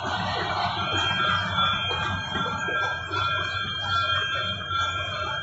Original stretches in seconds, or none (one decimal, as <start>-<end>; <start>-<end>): 0.0-5.4